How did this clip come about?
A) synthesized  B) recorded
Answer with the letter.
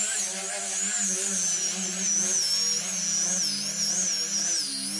B